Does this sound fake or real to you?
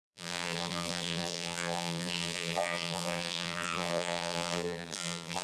fake